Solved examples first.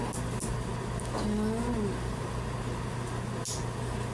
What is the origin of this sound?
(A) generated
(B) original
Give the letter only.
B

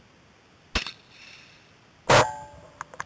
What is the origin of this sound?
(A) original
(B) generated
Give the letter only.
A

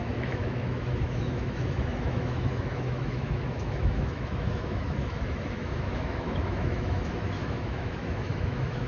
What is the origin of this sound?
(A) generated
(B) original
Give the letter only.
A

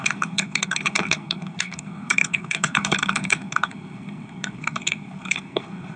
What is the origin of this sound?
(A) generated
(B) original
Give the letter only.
A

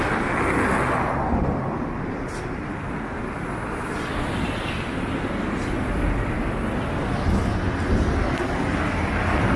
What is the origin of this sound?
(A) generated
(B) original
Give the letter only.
B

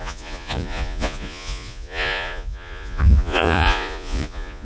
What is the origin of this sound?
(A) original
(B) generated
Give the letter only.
B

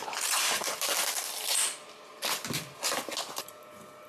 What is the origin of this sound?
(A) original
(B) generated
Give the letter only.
A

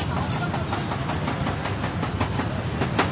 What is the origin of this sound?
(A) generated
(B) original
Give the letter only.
B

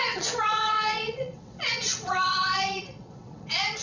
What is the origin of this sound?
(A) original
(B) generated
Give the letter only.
B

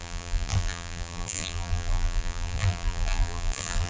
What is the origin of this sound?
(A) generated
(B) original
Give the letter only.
A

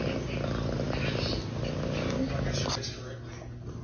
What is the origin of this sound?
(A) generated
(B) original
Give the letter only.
B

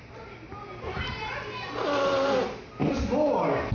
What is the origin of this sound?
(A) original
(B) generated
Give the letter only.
A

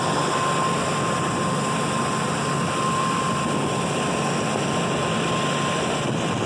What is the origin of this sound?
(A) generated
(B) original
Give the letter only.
B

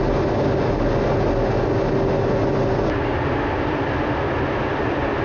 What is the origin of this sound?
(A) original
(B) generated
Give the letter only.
A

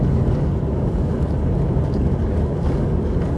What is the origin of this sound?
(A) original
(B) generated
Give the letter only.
B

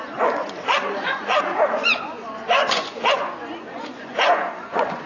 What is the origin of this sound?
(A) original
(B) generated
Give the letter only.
B